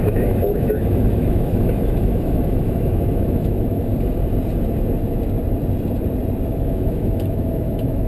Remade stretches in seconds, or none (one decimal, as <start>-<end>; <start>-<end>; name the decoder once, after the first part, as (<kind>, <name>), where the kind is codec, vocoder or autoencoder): 0.0-3.9 (autoencoder, DAC-VAE); 6.5-8.1